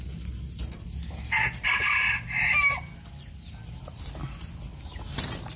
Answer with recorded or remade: recorded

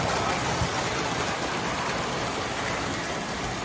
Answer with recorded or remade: recorded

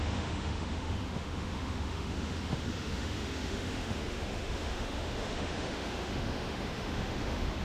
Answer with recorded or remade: remade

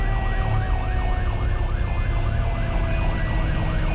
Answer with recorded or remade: recorded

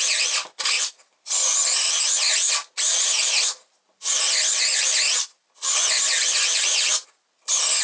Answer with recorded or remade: recorded